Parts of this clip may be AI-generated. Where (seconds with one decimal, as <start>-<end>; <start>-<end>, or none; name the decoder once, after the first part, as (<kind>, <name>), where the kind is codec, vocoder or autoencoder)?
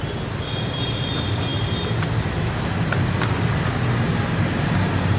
none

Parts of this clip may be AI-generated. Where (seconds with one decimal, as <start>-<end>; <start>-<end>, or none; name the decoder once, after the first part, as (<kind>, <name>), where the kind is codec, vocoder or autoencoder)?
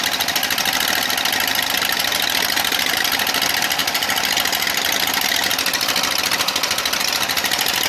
none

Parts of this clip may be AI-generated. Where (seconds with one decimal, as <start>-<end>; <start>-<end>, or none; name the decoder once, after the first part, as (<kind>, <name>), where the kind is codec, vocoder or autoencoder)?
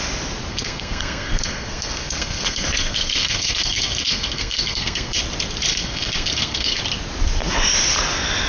0.5-5.2 (codec, SNAC); 5.7-6.8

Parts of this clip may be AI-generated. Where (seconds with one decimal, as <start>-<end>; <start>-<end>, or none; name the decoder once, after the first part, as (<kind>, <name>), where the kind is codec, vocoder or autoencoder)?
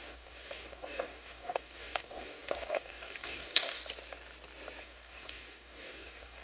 0.0-3.8 (codec, DAC); 4.8-6.4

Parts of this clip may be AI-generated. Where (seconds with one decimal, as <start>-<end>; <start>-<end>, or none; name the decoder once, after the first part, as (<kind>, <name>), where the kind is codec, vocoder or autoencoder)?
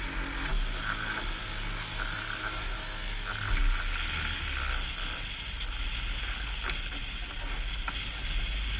none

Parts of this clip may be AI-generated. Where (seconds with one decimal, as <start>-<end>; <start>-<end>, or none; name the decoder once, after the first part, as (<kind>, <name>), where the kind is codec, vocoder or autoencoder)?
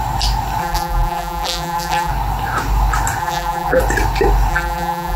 0.6-2.1 (vocoder, BigVGAN v2); 3.2-3.8; 4.5-5.2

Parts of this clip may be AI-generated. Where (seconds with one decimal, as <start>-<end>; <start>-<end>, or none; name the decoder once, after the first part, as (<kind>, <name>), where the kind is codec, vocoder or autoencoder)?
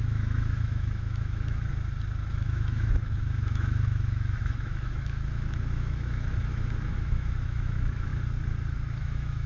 0.0-1.7 (autoencoder, DAC-VAE); 2.3-8.1; 9.0-9.5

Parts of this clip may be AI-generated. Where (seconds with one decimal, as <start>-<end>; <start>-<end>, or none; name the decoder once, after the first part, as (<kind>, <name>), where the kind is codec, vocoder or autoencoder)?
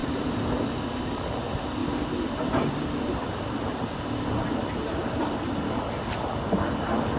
0.0-0.5 (vocoder, BigVGAN v2); 1.8-3.4